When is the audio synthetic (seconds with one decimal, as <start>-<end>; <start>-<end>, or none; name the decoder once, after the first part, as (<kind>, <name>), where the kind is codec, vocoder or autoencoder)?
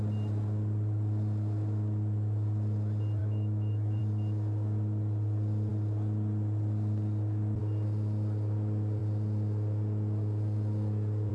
3.2-4.0 (autoencoder, DAC-VAE)